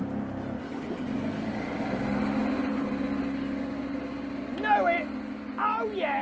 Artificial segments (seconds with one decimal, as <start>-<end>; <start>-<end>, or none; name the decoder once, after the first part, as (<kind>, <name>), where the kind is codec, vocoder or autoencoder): none